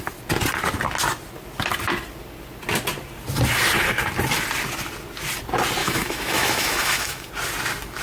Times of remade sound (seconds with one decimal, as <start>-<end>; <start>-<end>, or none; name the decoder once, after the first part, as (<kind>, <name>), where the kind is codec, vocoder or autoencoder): 5.8-7.3 (autoencoder, DAC-VAE)